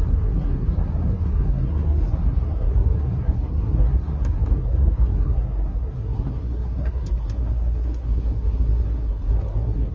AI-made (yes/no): yes